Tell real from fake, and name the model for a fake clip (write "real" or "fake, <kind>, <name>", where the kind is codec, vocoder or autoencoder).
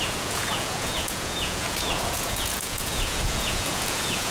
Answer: fake, vocoder, Vocos